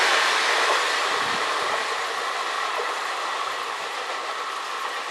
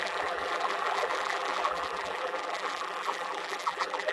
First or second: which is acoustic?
first